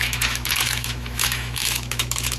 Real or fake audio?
fake